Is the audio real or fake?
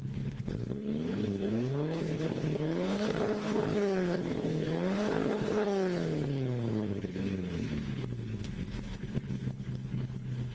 fake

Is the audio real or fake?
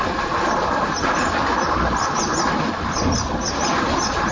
real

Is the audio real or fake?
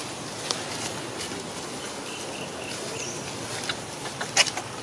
real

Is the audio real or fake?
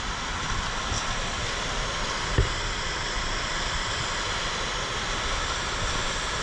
real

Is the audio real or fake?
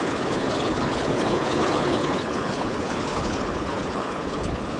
fake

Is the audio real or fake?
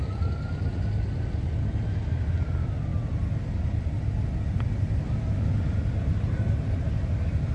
real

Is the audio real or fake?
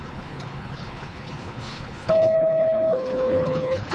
fake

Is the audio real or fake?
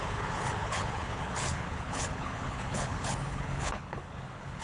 fake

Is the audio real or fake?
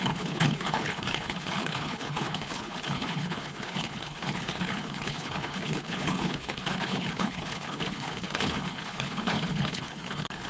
fake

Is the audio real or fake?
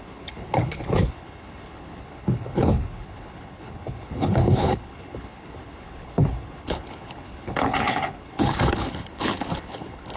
fake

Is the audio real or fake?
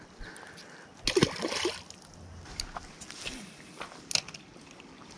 real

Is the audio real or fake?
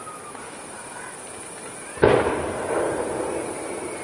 real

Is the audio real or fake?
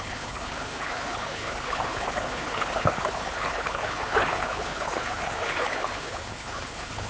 fake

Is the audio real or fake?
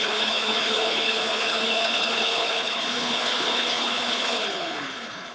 fake